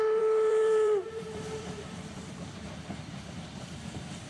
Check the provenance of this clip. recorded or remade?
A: remade